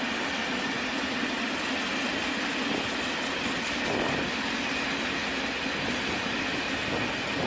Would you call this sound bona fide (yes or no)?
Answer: yes